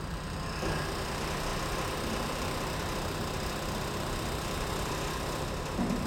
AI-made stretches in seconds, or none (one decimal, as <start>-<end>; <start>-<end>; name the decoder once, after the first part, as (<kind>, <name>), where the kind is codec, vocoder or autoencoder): none